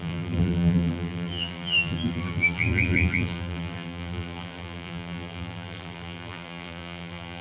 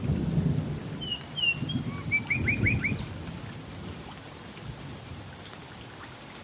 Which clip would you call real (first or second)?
second